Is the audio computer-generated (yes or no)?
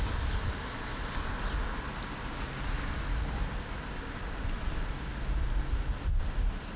no